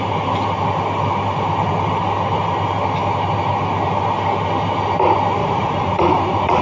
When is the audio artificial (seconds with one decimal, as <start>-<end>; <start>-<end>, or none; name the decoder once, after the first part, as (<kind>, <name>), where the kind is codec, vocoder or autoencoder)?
5.4-6.6 (vocoder, Vocos)